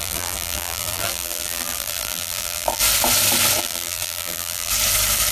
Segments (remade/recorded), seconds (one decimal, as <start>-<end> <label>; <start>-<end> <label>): 0.0-2.8 remade; 2.8-3.6 recorded; 3.6-4.7 remade; 4.7-5.3 recorded